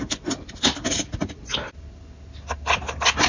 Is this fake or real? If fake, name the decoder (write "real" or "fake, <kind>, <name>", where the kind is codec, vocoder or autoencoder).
real